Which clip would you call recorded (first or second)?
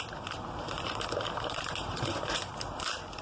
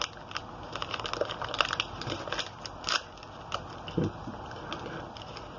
second